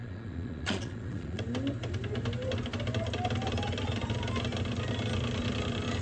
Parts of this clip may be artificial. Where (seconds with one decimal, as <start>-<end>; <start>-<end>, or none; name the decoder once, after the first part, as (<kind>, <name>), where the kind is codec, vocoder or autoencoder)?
0.0-1.4 (vocoder, Vocos)